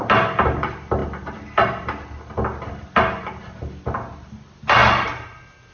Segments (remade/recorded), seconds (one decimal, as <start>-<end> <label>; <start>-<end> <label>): 0.0-5.7 recorded